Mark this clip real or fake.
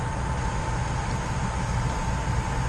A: real